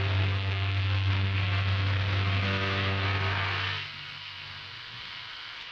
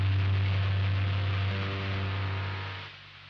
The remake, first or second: first